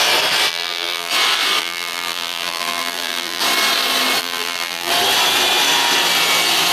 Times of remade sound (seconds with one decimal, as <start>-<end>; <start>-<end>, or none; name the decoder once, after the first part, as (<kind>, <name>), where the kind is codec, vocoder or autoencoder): 0.5-1.1 (vocoder, BigVGAN v2); 1.6-3.4; 4.2-4.9